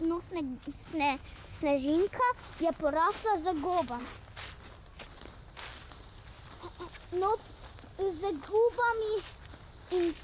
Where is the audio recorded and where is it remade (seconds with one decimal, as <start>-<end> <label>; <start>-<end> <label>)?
0.0-0.9 recorded; 0.9-4.0 remade; 4.0-10.2 recorded